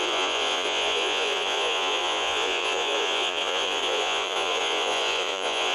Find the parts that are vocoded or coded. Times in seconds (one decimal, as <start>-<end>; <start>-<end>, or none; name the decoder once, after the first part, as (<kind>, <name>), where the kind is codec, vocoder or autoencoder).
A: 0.0-5.7 (vocoder, Vocos)